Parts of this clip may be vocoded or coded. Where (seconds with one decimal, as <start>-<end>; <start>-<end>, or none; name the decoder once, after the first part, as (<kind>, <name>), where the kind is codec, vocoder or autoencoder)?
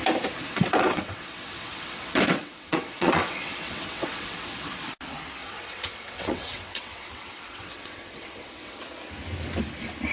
0.5-4.9 (vocoder, WaveNeXt); 5.4-8.8